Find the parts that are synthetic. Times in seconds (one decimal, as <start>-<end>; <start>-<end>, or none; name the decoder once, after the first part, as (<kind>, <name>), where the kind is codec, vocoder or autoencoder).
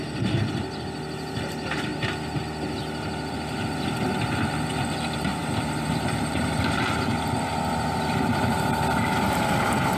5.3-6.7 (vocoder, BigVGAN v2)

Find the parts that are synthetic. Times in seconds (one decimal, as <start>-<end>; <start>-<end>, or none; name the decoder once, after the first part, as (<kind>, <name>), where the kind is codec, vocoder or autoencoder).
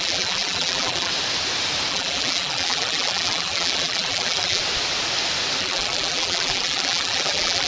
0.0-1.1 (vocoder, BigVGAN v2); 1.9-4.6; 5.6-7.7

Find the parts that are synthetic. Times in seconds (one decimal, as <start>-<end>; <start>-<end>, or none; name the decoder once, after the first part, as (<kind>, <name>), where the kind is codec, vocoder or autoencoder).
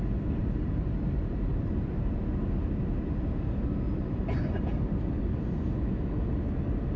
0.4-2.2 (vocoder, BigVGAN v2)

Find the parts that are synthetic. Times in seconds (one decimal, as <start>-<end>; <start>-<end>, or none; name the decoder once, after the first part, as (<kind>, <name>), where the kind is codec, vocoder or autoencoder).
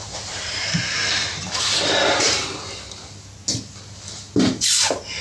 0.0-0.8 (vocoder, BigVGAN v2); 1.4-2.4; 4.6-5.2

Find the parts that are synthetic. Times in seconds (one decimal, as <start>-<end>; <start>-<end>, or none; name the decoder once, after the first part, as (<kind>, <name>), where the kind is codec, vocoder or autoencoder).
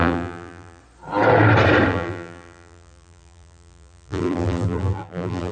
0.0-0.8 (vocoder, BigVGAN v2); 1.9-5.5